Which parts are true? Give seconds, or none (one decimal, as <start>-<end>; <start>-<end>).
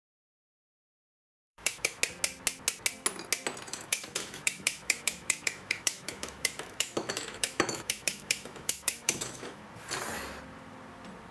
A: 2.0-3.7; 9.6-11.3